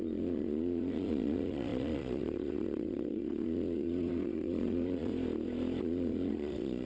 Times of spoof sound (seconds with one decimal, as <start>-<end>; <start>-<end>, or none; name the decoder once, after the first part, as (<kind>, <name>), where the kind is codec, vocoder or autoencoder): 0.0-5.1 (vocoder, Vocos); 5.8-6.9

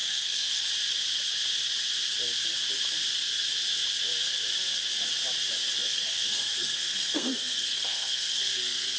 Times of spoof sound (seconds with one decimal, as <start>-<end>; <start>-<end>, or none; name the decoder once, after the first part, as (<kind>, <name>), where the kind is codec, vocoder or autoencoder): 0.0-0.6 (codec, SNAC); 5.8-9.0